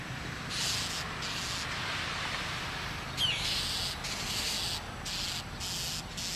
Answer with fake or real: real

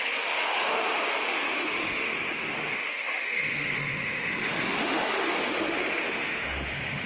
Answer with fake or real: fake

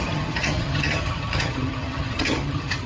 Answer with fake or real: fake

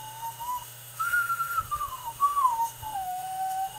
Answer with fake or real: fake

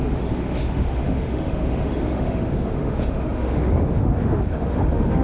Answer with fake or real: fake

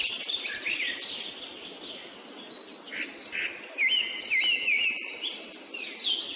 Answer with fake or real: real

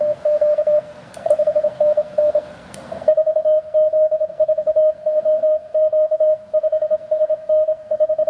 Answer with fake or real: fake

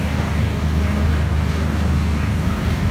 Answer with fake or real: fake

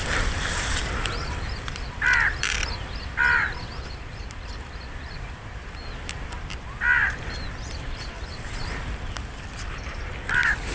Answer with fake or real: fake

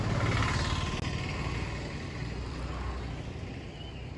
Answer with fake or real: real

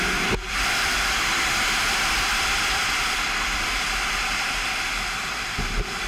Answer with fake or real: fake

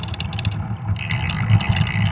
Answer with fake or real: real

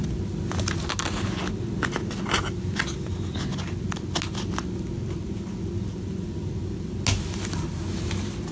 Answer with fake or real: real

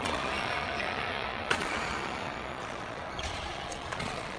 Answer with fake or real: fake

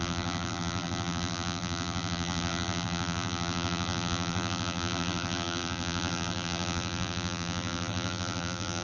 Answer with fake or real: fake